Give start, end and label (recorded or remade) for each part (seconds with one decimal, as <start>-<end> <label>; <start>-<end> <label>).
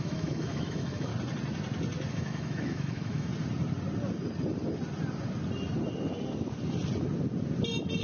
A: 0.0-1.1 remade; 1.1-2.1 recorded; 2.1-3.3 remade; 3.3-8.0 recorded